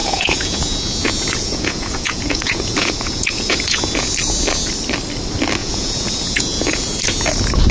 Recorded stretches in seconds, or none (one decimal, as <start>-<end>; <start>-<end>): 4.1-5.6; 7.3-7.7